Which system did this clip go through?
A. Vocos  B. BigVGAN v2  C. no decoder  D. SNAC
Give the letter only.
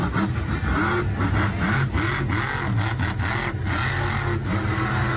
C